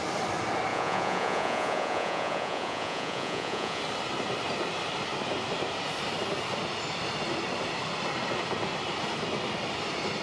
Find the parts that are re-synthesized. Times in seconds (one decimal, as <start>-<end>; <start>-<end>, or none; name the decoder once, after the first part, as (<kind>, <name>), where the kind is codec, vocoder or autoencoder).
0.7-3.8 (vocoder, Vocos)